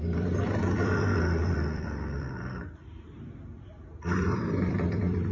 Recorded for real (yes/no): no